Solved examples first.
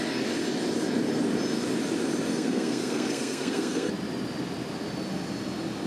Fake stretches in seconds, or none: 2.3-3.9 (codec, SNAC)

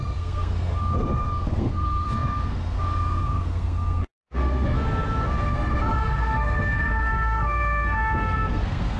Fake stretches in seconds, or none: 0.0-9.0 (codec, SNAC)

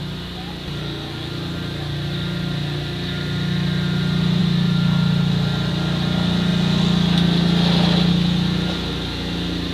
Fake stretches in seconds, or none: 0.8-1.3 (codec, SNAC)

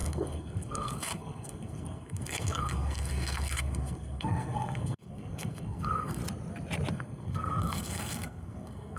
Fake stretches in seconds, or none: 0.0-6.2 (codec, SNAC); 6.9-9.0

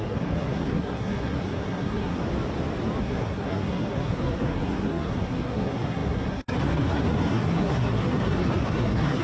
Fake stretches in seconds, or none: 0.0-2.2 (codec, SNAC); 3.0-9.2

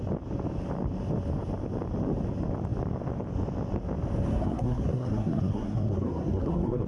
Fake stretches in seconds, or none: 4.3-6.9 (codec, SNAC)